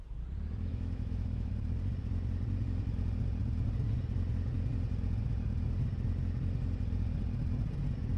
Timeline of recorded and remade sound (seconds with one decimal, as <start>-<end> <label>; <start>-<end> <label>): 0.0-0.7 recorded; 0.7-1.5 remade; 1.5-8.2 recorded